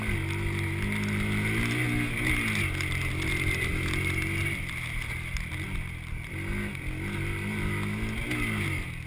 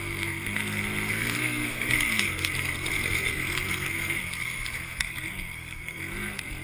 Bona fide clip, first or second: first